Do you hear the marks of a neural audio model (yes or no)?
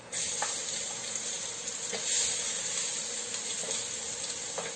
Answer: no